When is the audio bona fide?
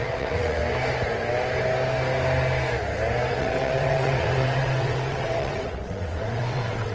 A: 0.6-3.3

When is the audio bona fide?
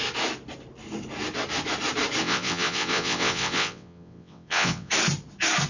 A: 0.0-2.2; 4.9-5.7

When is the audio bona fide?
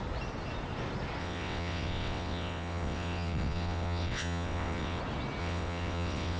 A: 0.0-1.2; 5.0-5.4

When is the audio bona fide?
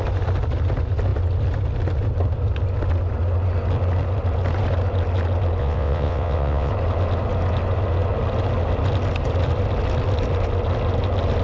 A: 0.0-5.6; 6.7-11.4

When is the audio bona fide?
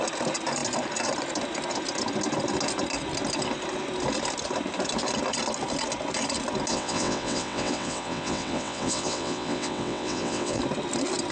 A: 0.0-6.7; 10.6-11.3